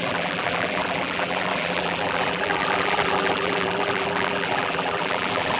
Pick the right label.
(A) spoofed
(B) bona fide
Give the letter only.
A